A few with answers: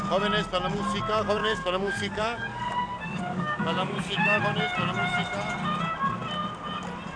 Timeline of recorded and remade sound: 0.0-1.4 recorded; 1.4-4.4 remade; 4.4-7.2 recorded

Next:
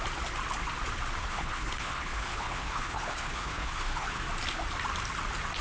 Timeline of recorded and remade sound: 0.0-1.2 recorded; 1.2-4.2 remade; 4.2-5.6 recorded